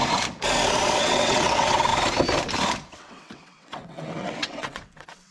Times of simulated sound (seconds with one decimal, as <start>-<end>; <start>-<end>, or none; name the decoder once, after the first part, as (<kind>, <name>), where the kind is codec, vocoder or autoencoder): 1.0-1.9 (vocoder, WaveNeXt); 2.9-5.3